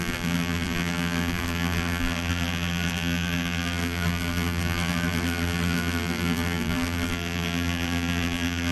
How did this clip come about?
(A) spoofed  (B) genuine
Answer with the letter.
A